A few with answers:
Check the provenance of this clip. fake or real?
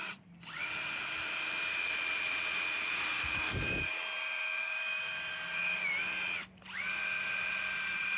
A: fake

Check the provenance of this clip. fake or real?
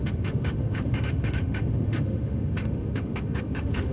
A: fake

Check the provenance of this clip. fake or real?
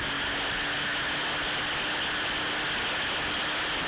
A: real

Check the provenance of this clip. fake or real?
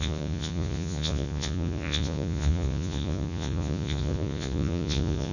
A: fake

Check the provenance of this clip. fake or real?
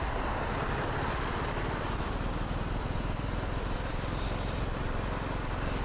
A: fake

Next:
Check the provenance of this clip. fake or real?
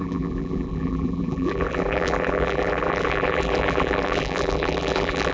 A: fake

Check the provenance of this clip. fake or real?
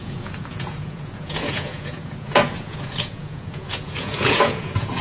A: fake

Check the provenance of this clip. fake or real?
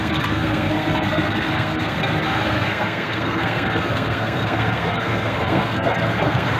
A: fake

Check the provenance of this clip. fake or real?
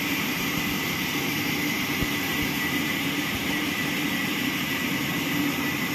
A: fake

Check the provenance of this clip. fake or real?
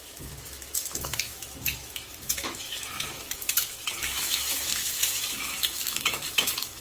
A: fake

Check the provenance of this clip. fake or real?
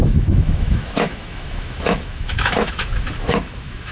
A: fake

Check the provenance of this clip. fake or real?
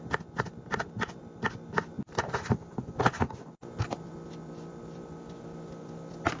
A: real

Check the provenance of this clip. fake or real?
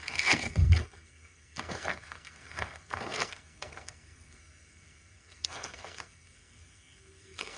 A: fake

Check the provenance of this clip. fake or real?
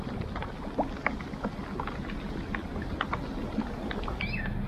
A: real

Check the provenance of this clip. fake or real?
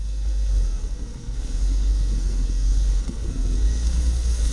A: fake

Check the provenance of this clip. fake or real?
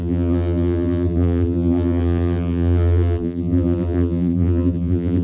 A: fake